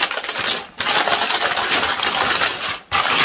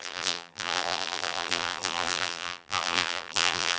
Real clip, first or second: first